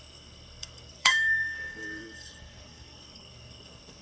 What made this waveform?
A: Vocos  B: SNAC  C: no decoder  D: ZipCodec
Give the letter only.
B